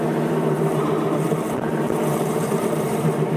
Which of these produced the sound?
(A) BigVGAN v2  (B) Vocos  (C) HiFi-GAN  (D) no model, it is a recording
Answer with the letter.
A